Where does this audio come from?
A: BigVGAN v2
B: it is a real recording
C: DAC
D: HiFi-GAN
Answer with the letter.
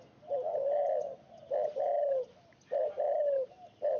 B